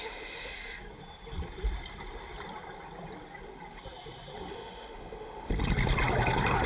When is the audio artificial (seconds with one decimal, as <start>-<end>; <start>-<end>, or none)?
0.0-0.5; 4.5-5.5

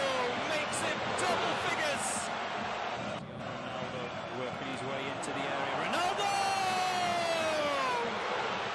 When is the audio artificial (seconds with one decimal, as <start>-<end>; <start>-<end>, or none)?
0.7-1.7

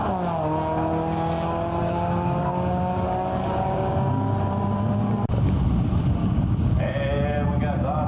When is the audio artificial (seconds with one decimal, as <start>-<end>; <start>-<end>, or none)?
1.8-3.9; 6.2-6.8

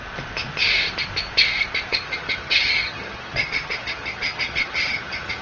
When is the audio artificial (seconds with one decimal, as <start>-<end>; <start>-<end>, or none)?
1.9-5.4

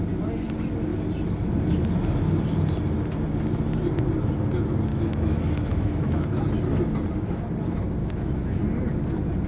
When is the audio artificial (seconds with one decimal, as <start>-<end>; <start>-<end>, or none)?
4.9-6.4; 8.0-8.6

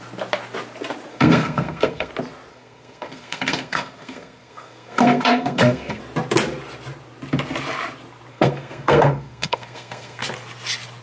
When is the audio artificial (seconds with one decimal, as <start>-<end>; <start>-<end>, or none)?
1.1-2.1; 2.5-6.0; 8.3-10.2

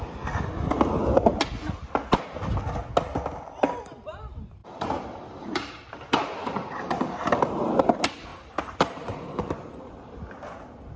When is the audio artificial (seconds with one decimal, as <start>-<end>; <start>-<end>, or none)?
4.6-7.3; 8.3-10.2

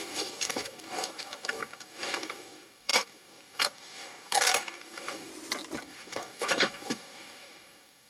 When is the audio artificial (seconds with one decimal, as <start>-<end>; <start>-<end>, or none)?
0.0-5.3; 5.8-8.1